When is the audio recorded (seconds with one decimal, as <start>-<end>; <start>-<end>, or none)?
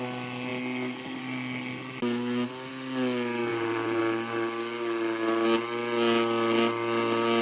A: 0.0-3.5; 4.0-7.4